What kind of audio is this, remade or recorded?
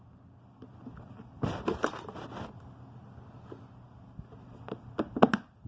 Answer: recorded